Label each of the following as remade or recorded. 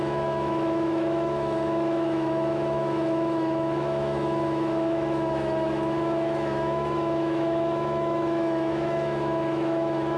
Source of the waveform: remade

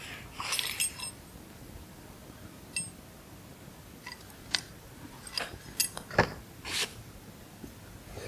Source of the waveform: recorded